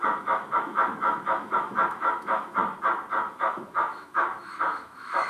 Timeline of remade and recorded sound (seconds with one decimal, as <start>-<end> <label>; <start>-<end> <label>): 0.0-2.6 remade; 2.6-3.3 recorded; 3.3-5.3 remade